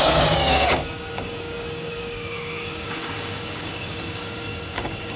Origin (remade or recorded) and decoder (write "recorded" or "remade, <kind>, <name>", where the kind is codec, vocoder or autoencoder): remade, codec, DAC